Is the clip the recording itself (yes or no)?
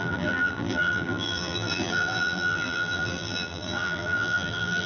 no